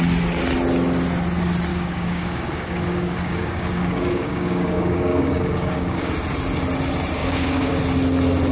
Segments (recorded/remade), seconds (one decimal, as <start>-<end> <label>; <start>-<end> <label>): 0.0-1.7 recorded; 1.7-6.1 remade; 6.1-7.2 recorded; 7.2-7.8 remade; 7.8-8.5 recorded